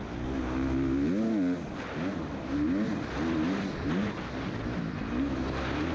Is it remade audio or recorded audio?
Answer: recorded